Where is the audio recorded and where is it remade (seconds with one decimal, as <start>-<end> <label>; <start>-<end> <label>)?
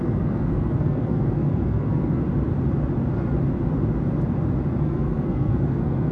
0.0-2.2 remade; 2.2-4.8 recorded; 4.8-6.1 remade